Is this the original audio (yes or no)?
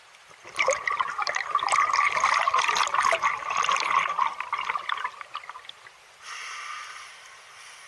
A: yes